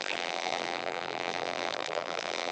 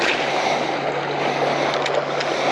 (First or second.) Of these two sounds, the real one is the second